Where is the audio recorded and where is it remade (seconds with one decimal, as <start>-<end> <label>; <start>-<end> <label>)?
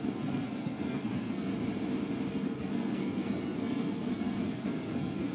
0.0-1.5 remade; 1.5-2.3 recorded; 2.3-5.3 remade